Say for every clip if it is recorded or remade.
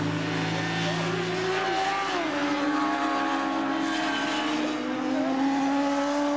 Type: recorded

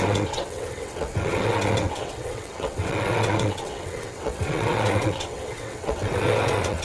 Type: remade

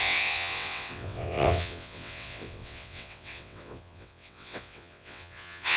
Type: remade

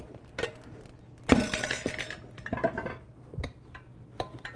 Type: recorded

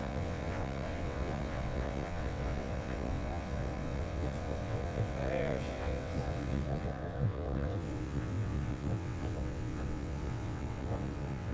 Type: remade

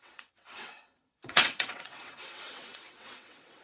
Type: remade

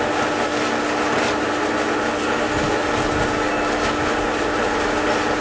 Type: recorded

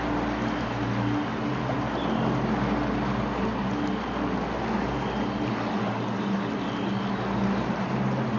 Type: recorded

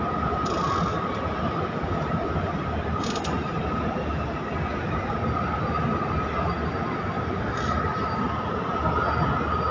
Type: recorded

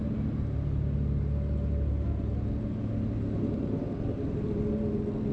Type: recorded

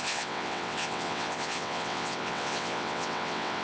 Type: remade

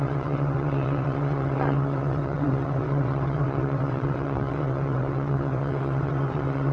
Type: remade